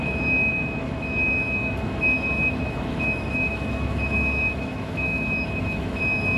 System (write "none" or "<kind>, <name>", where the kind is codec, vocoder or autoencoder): autoencoder, DAC-VAE